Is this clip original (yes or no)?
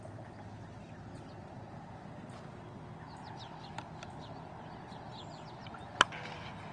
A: yes